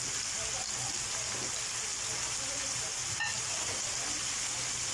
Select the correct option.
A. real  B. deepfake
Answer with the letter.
A